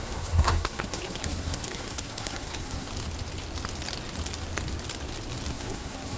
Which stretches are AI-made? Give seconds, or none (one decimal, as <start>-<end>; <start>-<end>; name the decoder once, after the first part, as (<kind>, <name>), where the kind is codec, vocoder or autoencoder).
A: 0.0-2.9 (codec, SNAC); 5.5-6.2

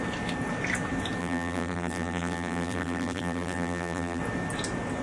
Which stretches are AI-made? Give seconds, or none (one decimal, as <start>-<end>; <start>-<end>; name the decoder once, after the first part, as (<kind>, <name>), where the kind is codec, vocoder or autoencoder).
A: 1.2-4.2 (vocoder, BigVGAN v2)

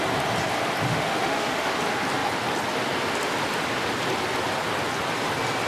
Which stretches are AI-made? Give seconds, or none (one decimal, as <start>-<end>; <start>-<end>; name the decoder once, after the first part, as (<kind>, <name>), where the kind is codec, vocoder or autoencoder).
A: 0.9-1.8 (autoencoder, DAC-VAE)